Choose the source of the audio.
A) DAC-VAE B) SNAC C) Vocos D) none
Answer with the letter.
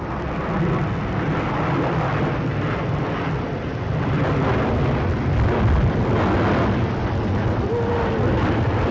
D